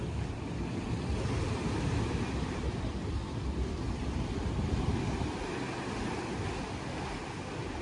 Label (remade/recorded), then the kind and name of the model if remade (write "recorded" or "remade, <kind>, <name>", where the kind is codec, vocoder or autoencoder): recorded